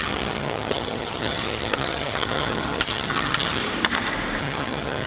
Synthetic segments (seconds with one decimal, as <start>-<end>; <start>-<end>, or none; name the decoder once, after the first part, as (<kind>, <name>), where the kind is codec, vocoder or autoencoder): 0.0-3.6 (vocoder, HiFi-GAN); 4.4-5.1

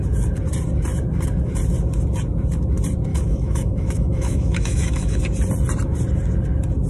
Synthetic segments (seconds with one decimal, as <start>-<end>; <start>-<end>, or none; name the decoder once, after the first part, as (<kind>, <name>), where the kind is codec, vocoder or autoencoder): 3.1-5.2 (autoencoder, DAC-VAE)

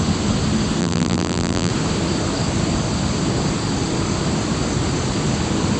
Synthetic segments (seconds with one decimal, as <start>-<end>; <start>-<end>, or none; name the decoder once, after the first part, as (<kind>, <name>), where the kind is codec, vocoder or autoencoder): 0.8-1.7 (vocoder, BigVGAN v2)

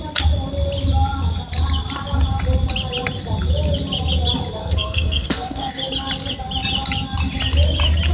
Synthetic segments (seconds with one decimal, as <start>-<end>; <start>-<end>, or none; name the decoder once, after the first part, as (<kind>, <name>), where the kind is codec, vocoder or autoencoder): 4.6-5.7 (codec, SNAC)

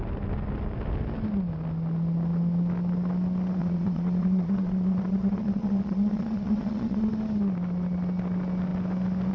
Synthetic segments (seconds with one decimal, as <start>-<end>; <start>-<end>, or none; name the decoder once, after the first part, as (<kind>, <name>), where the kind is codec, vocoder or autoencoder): 3.6-7.1 (vocoder, Vocos)